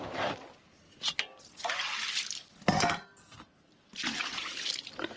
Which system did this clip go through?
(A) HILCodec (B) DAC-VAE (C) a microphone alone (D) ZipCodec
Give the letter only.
C